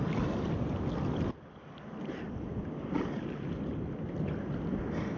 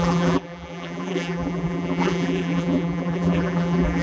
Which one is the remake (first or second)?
second